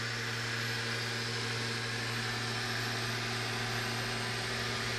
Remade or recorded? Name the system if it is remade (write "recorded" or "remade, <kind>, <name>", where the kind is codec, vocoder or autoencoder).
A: recorded